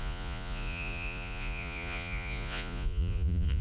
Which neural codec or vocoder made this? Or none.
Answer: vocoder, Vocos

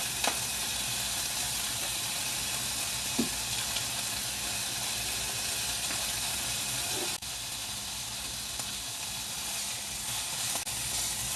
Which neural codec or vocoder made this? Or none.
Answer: none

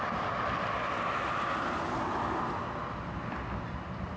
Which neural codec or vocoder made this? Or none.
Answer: none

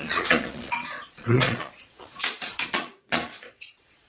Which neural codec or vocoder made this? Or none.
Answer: vocoder, Vocos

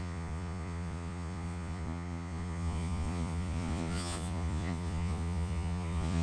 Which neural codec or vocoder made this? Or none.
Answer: vocoder, Vocos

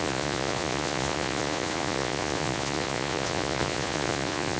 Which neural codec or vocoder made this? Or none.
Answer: vocoder, Vocos